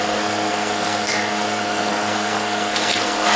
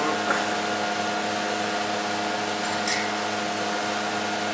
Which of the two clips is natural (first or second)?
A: second